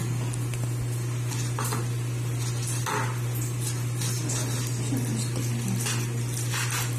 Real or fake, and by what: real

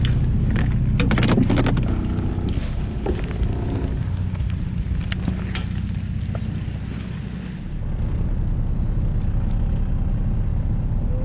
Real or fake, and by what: real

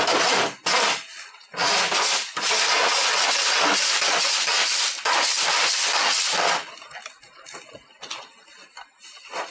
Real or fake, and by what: real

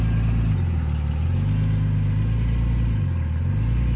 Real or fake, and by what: real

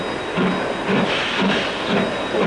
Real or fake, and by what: real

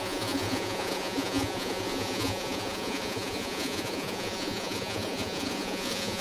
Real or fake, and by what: fake, vocoder, Vocos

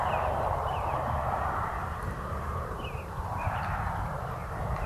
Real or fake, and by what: fake, vocoder, BigVGAN v2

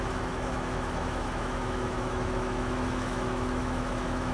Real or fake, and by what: fake, autoencoder, DAC-VAE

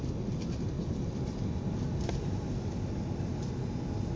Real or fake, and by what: real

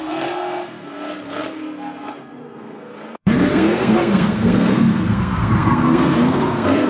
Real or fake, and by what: fake, codec, SNAC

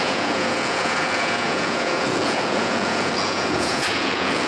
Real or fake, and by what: fake, vocoder, Vocos